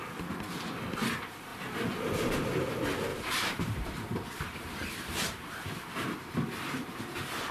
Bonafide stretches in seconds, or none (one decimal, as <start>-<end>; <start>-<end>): 0.0-1.5; 2.3-3.1; 6.3-7.5